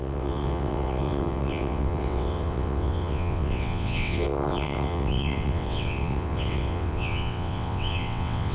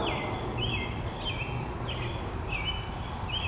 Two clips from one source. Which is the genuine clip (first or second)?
second